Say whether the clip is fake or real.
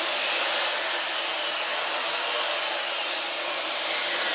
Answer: real